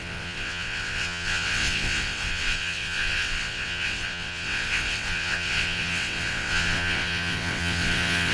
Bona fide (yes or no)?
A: no